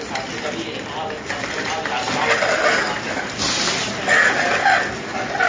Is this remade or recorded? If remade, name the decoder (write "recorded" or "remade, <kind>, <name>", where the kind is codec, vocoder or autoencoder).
recorded